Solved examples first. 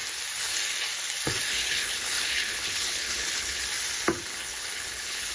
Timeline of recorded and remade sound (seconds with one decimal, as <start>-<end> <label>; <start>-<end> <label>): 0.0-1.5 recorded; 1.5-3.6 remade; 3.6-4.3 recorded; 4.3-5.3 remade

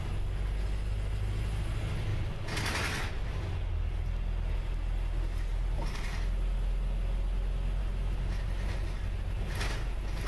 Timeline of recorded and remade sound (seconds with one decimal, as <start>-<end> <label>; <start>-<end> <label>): 0.0-10.3 recorded

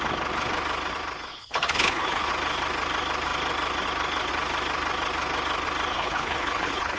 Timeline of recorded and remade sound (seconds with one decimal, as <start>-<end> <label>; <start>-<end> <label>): 0.0-1.3 recorded; 1.3-2.3 remade; 2.3-5.9 recorded; 5.9-7.0 remade

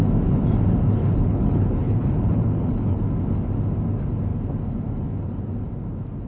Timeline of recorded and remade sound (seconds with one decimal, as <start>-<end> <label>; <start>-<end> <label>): 0.0-1.0 recorded; 1.0-3.0 remade; 3.0-6.3 recorded

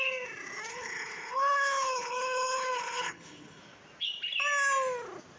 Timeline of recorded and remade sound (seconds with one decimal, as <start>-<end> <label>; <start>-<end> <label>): 0.0-0.7 recorded; 0.7-3.6 remade; 3.6-5.4 recorded

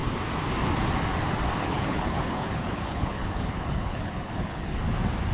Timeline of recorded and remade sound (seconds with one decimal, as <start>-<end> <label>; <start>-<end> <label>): 0.0-1.6 recorded; 1.6-4.8 remade; 4.8-5.3 recorded

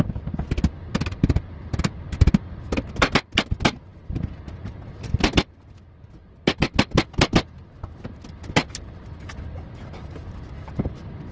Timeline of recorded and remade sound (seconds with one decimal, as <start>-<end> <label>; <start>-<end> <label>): 0.0-11.3 recorded